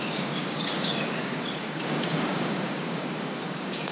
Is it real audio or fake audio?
fake